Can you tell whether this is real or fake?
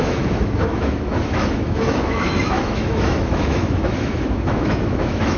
fake